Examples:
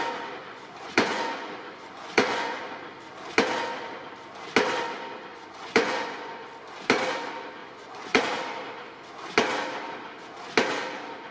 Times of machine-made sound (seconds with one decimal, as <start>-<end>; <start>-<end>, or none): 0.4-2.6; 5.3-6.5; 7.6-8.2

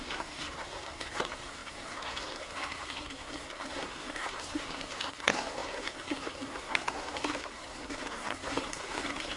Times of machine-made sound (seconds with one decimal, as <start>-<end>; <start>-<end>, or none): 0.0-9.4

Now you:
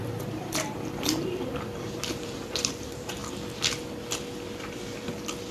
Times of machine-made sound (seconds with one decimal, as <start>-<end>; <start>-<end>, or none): 0.0-3.2

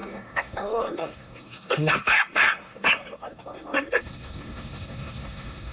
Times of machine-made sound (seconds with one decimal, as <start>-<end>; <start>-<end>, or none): 0.0-5.7

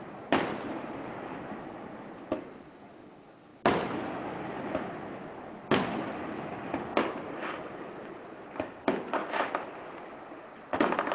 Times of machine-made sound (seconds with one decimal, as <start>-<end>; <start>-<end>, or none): 0.5-1.0

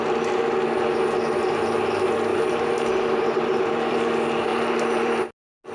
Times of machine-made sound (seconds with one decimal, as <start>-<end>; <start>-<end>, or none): 2.3-4.1; 4.5-5.1

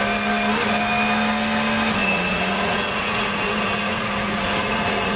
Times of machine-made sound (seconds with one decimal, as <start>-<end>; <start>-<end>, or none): 2.0-5.2